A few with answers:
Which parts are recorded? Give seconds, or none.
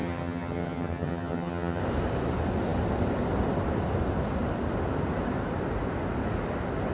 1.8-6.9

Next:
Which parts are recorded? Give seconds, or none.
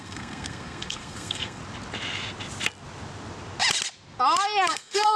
1.6-4.7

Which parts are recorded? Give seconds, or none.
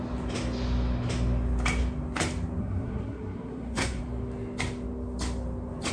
0.0-2.6; 4.0-5.9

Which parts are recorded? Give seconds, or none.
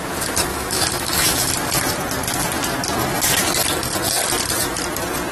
0.0-0.5; 1.5-5.3